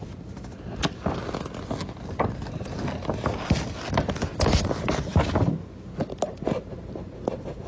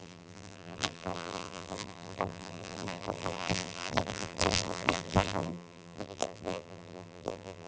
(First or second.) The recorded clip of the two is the first